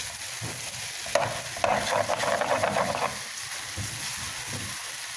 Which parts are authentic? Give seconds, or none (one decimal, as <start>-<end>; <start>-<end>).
0.0-5.2